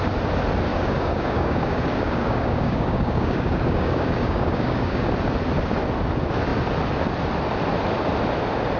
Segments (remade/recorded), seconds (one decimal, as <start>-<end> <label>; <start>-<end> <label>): 0.0-0.7 recorded; 0.7-5.1 remade; 5.1-8.8 recorded